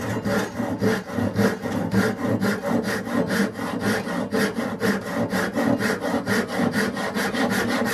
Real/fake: real